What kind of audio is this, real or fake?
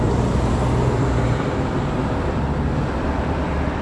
fake